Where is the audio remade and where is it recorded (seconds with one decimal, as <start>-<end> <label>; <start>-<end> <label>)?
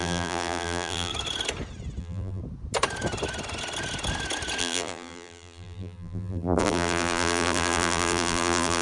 0.0-1.1 remade; 1.1-2.0 recorded; 2.0-2.4 remade; 2.4-4.6 recorded; 4.6-8.8 remade